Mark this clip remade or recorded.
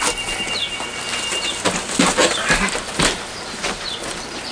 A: recorded